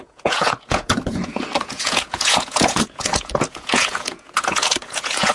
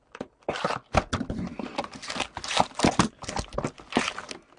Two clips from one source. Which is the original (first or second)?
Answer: second